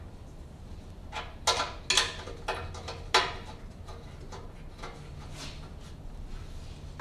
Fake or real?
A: real